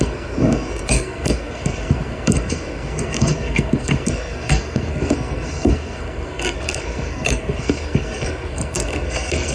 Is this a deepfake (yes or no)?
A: yes